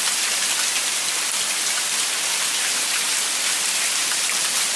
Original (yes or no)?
no